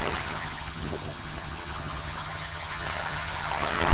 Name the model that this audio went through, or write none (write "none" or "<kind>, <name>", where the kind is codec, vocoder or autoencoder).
vocoder, HiFi-GAN